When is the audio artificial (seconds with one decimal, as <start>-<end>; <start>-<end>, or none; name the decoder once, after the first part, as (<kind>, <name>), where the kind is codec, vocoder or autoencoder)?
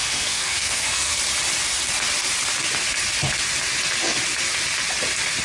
0.0-1.2 (codec, SNAC)